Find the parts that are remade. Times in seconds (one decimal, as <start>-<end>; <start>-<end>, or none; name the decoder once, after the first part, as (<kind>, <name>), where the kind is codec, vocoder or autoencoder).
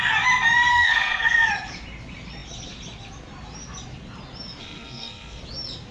0.7-1.5 (codec, SNAC); 4.6-5.4